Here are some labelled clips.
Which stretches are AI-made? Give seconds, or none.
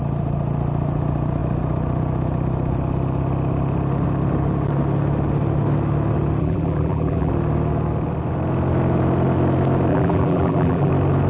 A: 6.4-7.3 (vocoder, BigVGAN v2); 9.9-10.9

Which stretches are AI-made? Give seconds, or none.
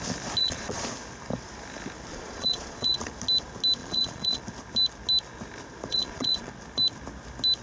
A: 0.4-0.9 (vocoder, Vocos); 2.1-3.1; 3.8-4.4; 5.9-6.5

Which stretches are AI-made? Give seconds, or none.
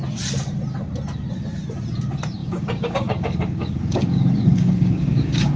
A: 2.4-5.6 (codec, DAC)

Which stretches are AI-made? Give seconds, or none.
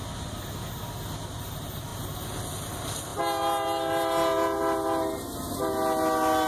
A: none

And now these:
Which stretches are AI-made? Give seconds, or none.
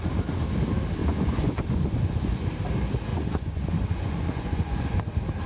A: 1.0-2.5 (vocoder, Vocos); 3.1-5.1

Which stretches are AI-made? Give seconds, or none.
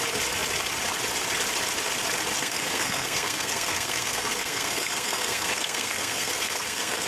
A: 2.4-7.1 (codec, SNAC)